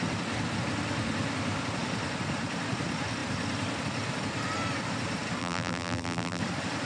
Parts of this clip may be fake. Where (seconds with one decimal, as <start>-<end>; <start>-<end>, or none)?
5.4-6.4